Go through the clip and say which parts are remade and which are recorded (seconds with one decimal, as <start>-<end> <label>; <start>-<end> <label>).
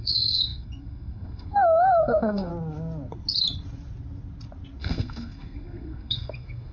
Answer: 0.0-2.5 remade; 2.5-4.8 recorded; 4.8-6.7 remade